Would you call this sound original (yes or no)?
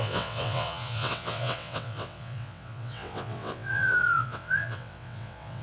no